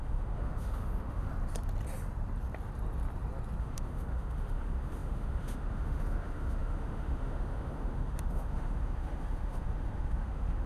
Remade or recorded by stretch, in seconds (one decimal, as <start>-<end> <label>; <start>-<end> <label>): 0.0-1.3 remade; 1.3-3.6 recorded; 3.6-10.7 remade

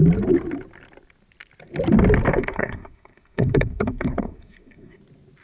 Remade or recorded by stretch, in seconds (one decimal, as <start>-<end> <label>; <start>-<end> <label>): 0.0-2.3 recorded; 2.3-5.0 remade; 5.0-5.4 recorded

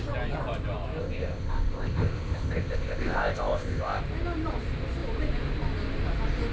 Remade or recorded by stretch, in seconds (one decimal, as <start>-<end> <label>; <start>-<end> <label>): 0.0-1.0 recorded; 1.0-4.0 remade; 4.0-6.5 recorded

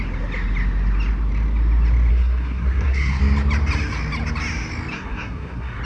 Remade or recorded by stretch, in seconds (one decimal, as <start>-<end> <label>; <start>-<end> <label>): 0.0-2.1 recorded; 2.1-3.2 remade; 3.2-4.9 recorded; 4.9-5.8 remade